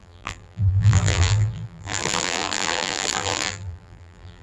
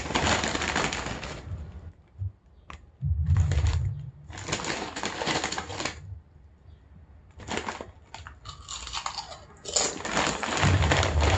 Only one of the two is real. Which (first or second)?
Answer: second